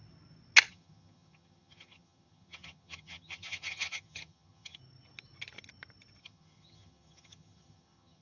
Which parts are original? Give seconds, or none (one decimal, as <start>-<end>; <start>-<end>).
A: 0.0-0.7; 4.8-6.2